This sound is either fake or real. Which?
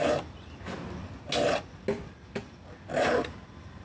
real